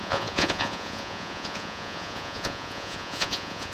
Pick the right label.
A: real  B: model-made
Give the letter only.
B